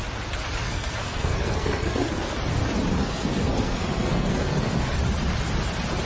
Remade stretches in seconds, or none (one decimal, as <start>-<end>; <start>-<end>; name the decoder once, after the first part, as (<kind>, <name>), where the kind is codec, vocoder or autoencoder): 0.6-2.4 (codec, SNAC); 3.0-4.9